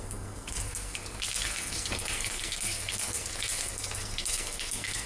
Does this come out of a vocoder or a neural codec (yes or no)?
yes